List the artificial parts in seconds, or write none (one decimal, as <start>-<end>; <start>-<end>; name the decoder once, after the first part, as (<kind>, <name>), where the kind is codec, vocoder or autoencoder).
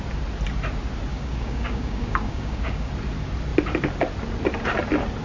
1.1-2.9 (codec, DAC)